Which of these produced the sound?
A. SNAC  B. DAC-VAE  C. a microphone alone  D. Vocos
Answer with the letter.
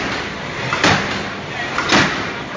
C